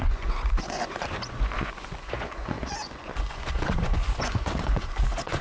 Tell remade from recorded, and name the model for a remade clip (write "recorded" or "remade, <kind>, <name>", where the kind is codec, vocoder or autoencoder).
remade, vocoder, Vocos